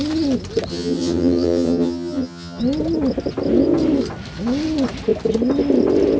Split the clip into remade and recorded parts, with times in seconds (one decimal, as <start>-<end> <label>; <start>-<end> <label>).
0.0-0.7 recorded; 0.7-2.6 remade; 2.6-6.2 recorded